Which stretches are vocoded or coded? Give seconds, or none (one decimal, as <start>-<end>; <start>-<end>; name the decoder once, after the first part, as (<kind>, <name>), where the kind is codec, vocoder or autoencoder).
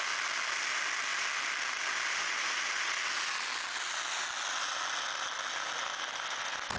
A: none